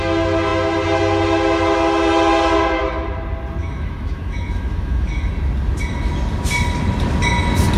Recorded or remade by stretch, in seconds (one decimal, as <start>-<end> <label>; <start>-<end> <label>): 0.0-3.6 recorded; 3.6-5.3 remade; 5.3-7.8 recorded